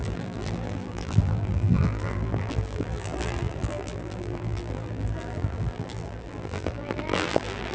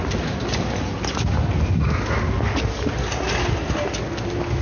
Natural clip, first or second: second